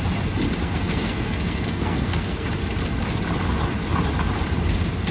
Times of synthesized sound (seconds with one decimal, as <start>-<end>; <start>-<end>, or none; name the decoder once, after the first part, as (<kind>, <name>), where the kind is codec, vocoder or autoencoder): 0.6-2.5 (codec, SNAC)